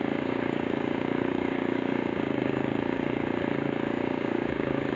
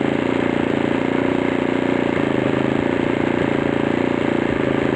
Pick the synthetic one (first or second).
first